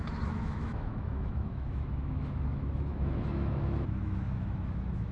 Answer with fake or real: fake